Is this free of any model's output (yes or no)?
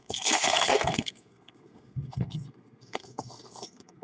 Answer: no